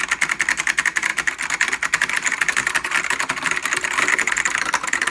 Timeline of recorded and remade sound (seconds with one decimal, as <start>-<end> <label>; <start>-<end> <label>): 0.0-5.1 recorded